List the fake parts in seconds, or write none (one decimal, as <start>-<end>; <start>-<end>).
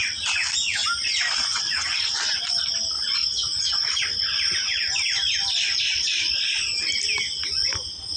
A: none